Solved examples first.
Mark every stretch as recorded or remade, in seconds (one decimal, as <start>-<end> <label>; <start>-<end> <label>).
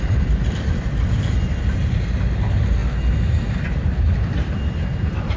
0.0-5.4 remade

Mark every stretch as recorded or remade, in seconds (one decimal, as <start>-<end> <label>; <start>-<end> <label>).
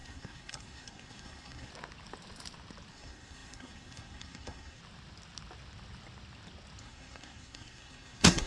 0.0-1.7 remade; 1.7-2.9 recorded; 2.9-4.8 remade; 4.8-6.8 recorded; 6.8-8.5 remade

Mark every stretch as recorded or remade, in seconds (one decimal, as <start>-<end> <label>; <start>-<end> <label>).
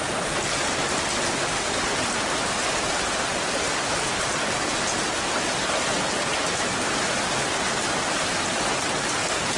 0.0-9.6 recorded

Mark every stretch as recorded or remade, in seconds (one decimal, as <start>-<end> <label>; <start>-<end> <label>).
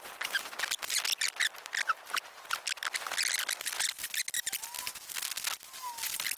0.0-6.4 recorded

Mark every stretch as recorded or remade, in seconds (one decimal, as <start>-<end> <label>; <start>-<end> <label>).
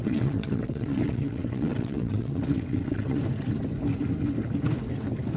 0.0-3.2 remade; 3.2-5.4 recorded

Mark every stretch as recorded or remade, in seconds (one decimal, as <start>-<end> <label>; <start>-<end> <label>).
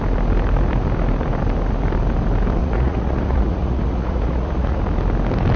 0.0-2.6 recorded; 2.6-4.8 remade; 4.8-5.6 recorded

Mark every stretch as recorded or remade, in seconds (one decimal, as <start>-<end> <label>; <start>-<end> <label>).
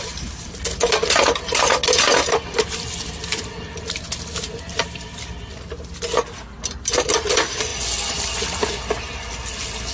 0.0-9.9 recorded